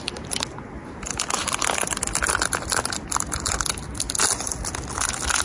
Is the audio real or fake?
real